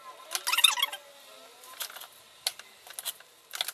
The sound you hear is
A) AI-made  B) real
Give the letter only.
B